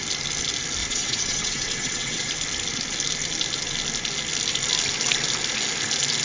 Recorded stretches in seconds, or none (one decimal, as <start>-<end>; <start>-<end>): 0.0-0.8; 2.3-6.2